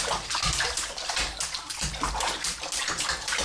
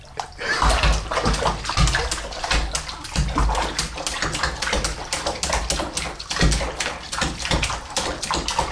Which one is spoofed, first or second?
first